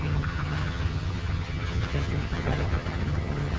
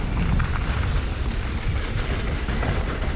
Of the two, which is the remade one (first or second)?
first